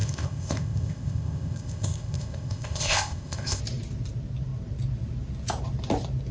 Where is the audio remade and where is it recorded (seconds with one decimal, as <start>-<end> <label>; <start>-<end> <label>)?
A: 0.0-3.6 remade; 3.6-6.3 recorded